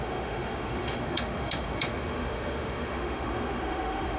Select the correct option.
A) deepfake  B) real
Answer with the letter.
A